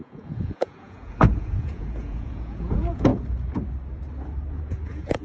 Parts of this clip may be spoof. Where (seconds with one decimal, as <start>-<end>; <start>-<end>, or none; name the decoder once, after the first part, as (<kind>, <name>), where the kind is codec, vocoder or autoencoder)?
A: 0.0-3.1 (vocoder, Vocos); 4.5-5.2